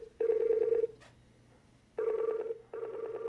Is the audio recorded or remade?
recorded